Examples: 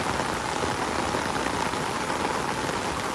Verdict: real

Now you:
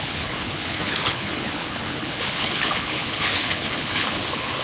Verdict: fake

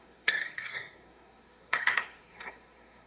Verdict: fake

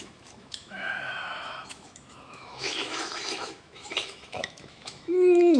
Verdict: fake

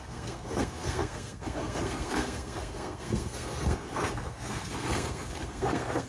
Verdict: fake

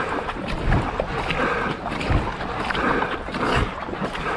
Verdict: real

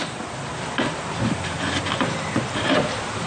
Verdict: fake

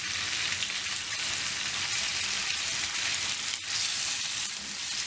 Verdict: real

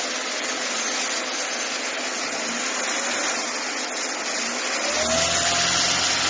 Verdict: real